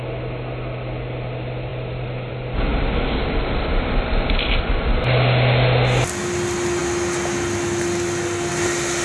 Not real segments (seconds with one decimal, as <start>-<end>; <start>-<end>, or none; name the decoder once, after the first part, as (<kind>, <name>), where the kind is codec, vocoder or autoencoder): 1.7-2.3 (vocoder, BigVGAN v2); 2.7-5.0